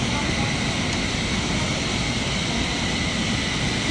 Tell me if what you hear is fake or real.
real